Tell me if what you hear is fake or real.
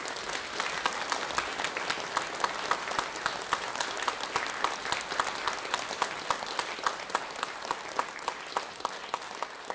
real